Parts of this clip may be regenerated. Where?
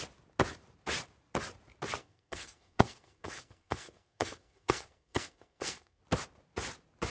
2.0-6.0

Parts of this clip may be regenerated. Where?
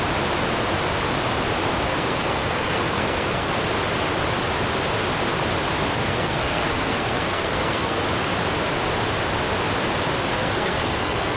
1.9-3.5; 6.0-8.0; 10.3-11.4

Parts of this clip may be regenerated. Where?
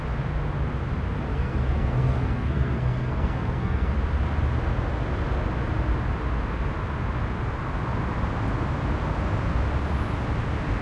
1.3-3.9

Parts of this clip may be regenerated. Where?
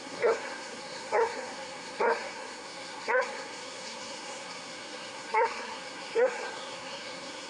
0.0-7.5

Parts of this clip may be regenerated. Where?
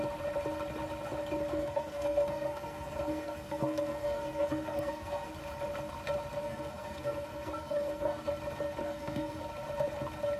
1.5-5.3; 6.4-8.3; 8.8-9.4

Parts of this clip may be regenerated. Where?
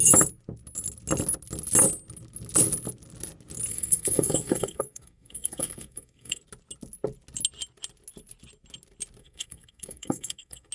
3.7-6.4; 9.2-10.7